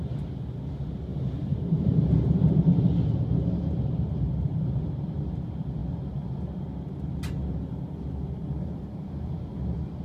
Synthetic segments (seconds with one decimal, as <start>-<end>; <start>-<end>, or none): 1.1-4.8; 7.6-9.4